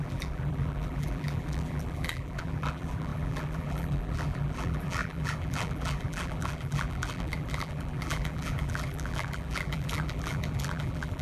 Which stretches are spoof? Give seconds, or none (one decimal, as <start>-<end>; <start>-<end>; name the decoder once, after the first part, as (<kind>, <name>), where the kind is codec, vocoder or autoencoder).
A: 0.0-11.2 (vocoder, BigVGAN v2)